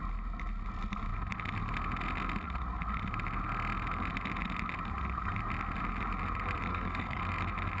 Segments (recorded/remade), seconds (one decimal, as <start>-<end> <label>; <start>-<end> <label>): 0.0-6.7 recorded; 6.7-7.2 remade; 7.2-7.8 recorded